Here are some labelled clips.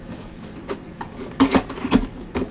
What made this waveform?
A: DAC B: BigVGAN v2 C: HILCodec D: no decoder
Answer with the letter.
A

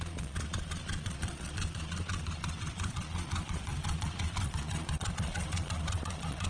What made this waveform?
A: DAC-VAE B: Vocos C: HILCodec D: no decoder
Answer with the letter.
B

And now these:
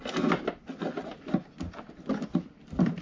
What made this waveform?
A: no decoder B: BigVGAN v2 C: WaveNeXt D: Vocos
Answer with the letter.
B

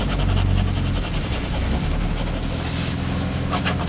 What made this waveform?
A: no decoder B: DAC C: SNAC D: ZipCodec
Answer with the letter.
A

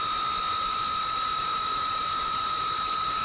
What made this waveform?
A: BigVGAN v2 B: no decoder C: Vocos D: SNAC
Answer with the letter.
B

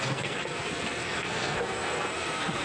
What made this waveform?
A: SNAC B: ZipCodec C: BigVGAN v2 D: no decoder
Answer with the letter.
A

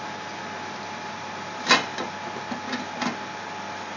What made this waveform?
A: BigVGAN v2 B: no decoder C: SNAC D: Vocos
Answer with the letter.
B